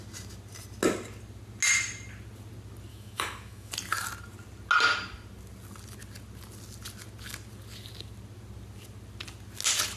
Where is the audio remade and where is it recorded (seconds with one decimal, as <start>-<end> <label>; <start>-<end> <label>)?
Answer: 0.0-2.9 recorded; 2.9-3.7 remade; 3.7-10.0 recorded